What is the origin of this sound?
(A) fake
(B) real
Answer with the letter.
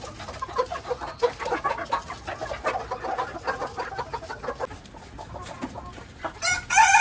B